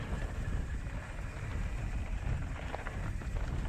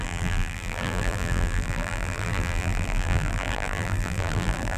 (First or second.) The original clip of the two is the first